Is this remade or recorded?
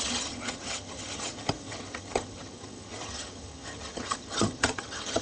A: remade